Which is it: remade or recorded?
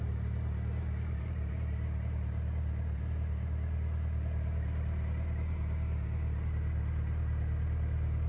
recorded